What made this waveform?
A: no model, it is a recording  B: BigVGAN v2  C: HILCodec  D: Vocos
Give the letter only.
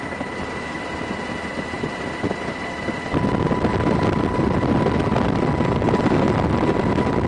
A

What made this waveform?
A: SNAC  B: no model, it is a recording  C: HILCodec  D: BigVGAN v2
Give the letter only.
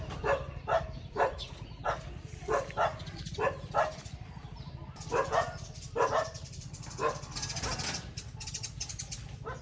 D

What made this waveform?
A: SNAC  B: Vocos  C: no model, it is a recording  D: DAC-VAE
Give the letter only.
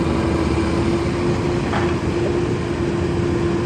C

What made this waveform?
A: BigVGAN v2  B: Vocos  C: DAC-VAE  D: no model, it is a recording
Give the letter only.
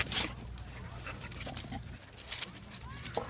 A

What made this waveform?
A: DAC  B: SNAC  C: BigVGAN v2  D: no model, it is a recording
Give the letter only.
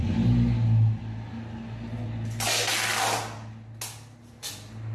D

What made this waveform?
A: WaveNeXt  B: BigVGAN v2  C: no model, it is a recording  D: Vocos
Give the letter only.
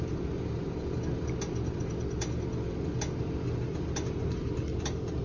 C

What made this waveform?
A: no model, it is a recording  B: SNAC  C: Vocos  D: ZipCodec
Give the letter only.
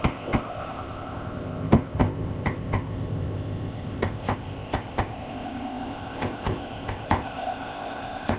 D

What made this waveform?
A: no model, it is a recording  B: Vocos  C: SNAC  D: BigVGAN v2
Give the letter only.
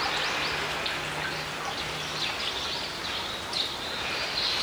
A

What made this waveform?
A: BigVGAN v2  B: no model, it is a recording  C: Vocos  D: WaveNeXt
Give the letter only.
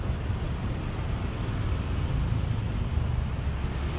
B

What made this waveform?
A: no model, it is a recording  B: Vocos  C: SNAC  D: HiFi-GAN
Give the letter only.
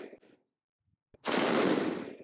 A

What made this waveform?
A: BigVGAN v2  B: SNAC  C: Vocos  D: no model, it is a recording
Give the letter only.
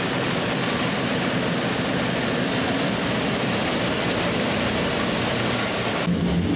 D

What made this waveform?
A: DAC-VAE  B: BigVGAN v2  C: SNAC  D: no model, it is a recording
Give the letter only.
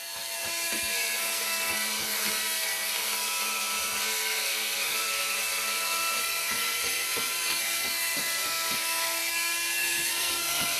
C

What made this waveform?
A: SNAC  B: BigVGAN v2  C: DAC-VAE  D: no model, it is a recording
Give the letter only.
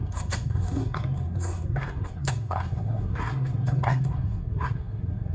A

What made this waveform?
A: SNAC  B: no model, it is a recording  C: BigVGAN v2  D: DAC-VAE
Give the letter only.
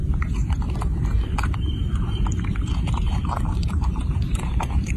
C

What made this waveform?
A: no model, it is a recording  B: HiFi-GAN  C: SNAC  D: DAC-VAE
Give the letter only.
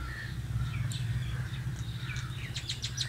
A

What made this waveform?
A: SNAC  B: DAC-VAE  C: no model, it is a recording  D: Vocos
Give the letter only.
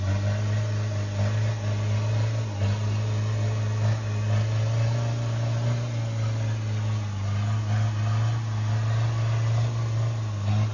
C